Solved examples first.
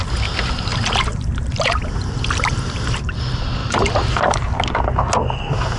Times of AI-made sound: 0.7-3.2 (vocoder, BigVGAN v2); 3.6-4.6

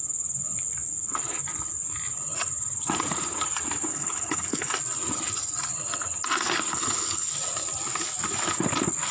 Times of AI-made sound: 3.9-4.7 (codec, HILCodec); 6.7-7.3